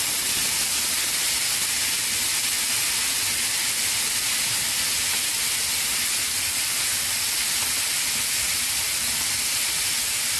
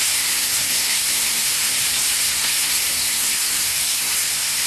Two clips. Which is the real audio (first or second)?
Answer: first